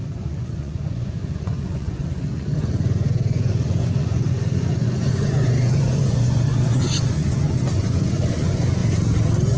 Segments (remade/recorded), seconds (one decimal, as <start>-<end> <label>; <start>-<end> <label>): 0.0-8.8 remade; 8.8-9.6 recorded